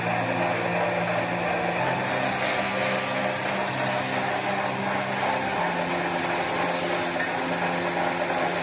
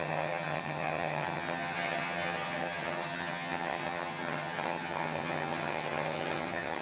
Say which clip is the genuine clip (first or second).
first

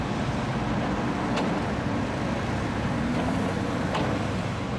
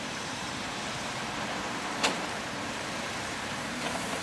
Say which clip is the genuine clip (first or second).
first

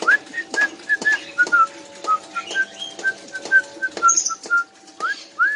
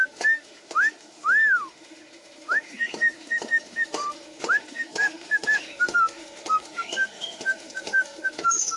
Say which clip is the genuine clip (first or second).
first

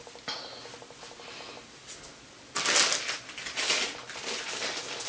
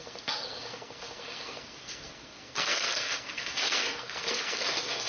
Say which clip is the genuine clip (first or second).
first